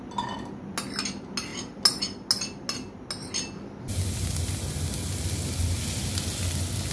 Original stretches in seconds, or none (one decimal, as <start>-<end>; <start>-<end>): 0.0-6.9